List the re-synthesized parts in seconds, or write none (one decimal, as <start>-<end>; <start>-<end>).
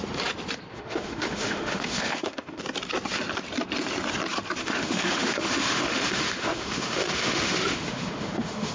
0.7-2.6; 4.6-8.7